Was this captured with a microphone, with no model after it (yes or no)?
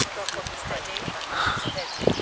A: yes